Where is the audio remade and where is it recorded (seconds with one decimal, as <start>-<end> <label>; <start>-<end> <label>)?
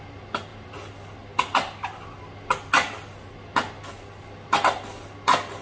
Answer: 0.0-5.6 recorded